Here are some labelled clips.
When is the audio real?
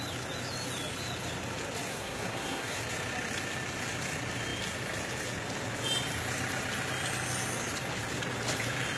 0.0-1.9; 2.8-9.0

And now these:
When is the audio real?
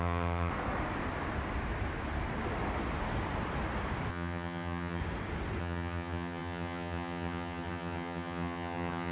0.5-4.1; 5.0-5.6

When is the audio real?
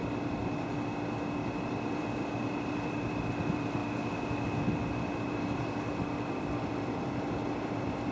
0.0-1.6; 3.8-5.3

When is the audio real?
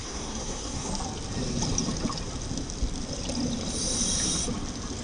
0.9-5.0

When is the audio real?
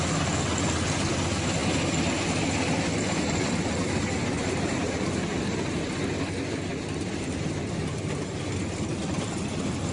0.0-9.9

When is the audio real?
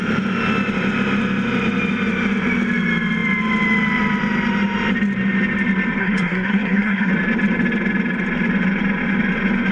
0.0-6.0; 7.1-9.7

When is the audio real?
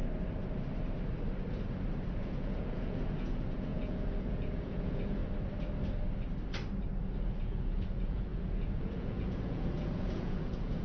0.0-2.2; 5.2-7.3